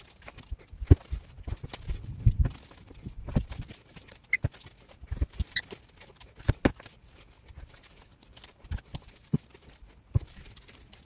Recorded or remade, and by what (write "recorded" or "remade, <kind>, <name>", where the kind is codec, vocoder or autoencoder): recorded